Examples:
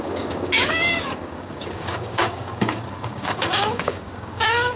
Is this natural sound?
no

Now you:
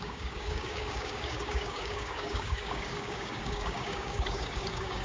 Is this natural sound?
no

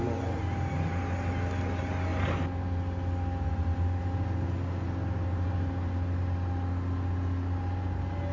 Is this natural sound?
yes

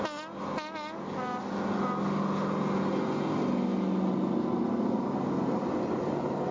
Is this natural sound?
yes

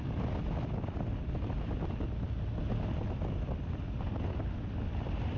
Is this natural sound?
yes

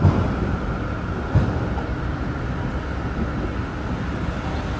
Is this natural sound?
yes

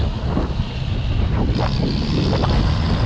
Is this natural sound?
yes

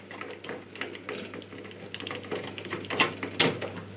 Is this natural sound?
yes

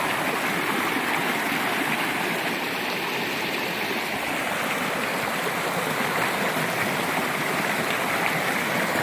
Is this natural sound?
yes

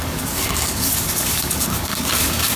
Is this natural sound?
no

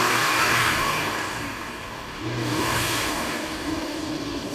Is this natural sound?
no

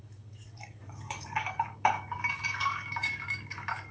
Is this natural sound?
no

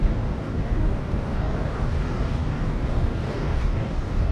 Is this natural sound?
no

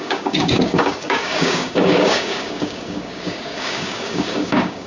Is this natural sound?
no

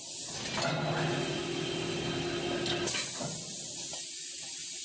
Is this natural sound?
yes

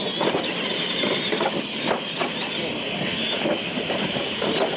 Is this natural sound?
yes